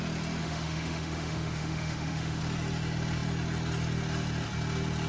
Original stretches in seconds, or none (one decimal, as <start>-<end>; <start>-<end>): 0.0-0.4; 2.4-5.1

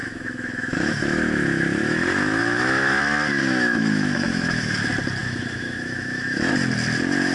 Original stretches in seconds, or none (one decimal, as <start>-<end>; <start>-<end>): 3.0-3.4; 4.7-5.2; 6.5-7.3

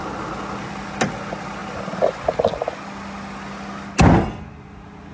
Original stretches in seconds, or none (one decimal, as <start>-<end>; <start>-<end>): 0.0-5.1

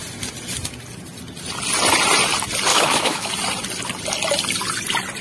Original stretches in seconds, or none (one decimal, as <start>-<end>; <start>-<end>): 0.0-2.7; 3.3-5.2

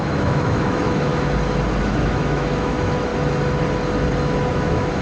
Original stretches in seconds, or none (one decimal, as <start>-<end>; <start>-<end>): 1.1-1.8; 3.1-4.5

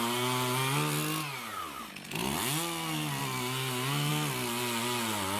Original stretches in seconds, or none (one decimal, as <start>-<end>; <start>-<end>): 0.0-5.4